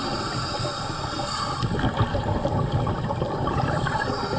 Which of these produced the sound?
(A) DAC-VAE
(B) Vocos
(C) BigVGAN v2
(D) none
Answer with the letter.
D